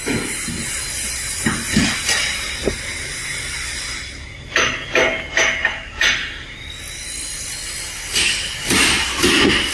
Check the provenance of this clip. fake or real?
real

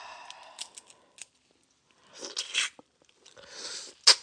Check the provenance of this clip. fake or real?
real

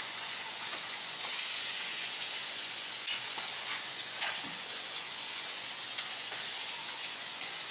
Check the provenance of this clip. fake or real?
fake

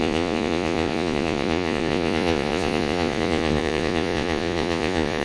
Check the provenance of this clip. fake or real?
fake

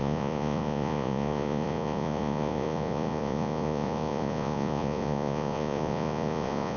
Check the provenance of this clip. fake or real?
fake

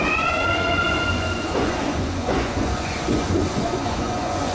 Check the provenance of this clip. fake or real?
fake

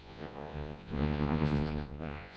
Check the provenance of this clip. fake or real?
fake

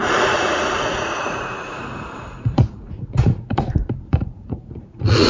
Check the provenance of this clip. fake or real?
fake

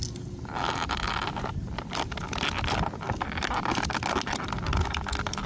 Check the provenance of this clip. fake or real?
real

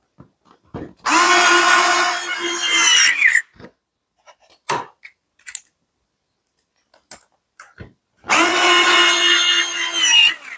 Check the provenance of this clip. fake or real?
real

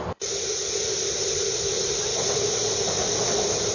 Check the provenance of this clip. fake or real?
real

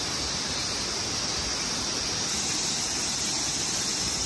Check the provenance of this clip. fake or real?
real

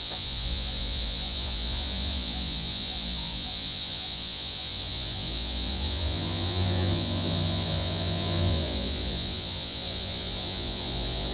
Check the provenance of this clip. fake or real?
fake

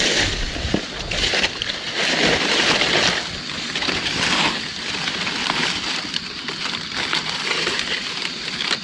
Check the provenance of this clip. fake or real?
real